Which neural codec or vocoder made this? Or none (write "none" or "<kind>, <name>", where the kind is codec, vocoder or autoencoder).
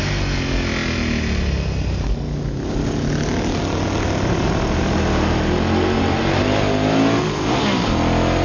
none